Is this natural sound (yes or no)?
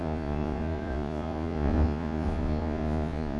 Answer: no